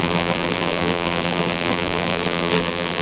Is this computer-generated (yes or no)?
yes